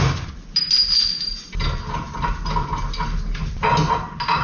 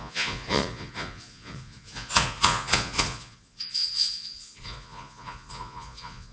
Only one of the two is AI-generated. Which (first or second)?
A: second